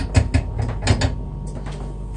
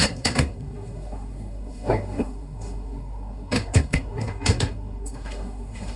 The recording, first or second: first